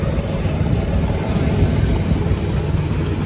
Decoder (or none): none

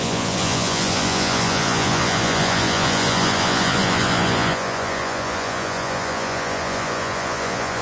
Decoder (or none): vocoder, Vocos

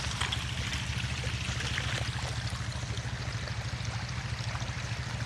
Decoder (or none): none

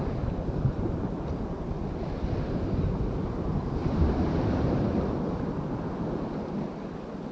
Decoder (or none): none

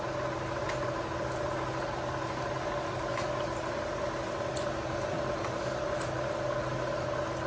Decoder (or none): none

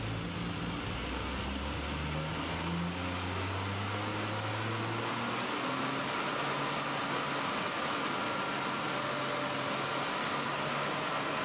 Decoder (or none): none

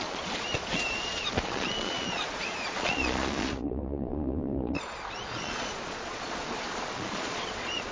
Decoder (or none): vocoder, Vocos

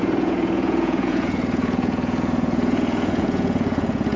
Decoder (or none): vocoder, Vocos